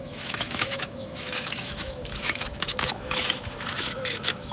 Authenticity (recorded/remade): remade